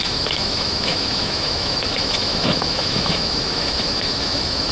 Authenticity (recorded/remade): remade